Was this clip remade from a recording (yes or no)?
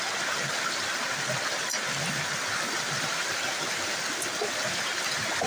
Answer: no